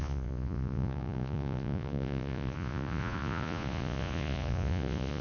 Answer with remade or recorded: remade